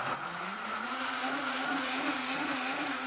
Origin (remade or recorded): remade